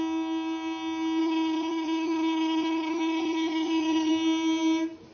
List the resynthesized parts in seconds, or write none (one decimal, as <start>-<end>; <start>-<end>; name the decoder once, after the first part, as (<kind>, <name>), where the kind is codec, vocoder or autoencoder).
1.2-4.1 (vocoder, HiFi-GAN)